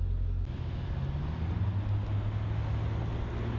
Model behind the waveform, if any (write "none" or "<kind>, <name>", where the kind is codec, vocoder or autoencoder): none